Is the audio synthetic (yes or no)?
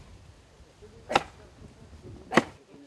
no